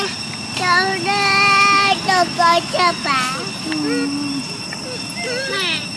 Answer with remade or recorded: recorded